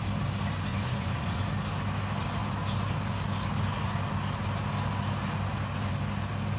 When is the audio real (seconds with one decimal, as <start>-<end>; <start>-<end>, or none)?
0.0-0.7; 1.4-6.6